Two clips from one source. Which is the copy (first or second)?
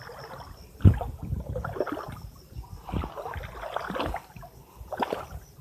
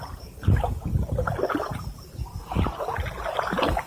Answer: second